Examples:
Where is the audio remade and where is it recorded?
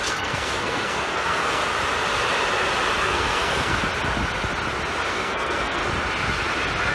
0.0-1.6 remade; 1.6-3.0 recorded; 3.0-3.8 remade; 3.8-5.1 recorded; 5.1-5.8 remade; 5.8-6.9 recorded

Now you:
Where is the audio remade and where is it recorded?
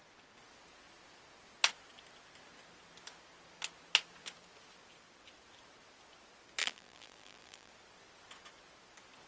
0.0-6.6 recorded; 6.6-7.7 remade; 7.7-9.3 recorded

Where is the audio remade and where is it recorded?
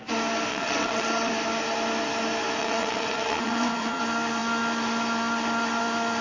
0.0-0.5 recorded; 0.5-1.3 remade; 1.3-2.6 recorded; 2.6-4.0 remade; 4.0-6.2 recorded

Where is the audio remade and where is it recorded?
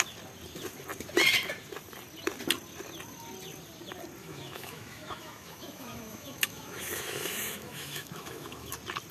0.0-4.2 recorded; 4.2-8.7 remade; 8.7-9.1 recorded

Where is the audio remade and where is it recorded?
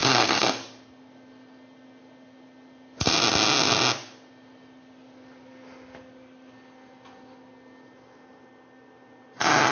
0.0-0.6 remade; 0.6-9.7 recorded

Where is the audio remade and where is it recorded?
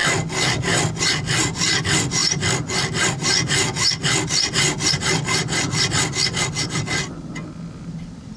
0.0-8.4 recorded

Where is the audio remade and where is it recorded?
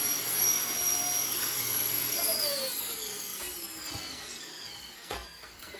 0.0-5.8 remade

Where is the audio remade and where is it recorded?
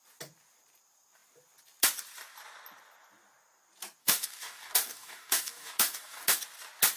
0.0-4.0 recorded; 4.0-6.4 remade; 6.4-7.0 recorded